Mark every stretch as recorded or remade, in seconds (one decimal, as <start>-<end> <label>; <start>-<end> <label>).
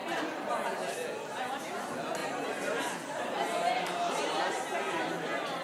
0.0-0.5 remade; 0.5-2.2 recorded; 2.2-4.4 remade; 4.4-5.6 recorded